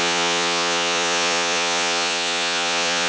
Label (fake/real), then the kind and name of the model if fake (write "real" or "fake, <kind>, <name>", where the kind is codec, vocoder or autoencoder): fake, vocoder, Vocos